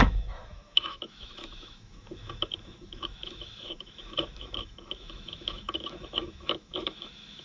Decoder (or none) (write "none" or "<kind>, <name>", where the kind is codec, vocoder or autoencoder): autoencoder, DAC-VAE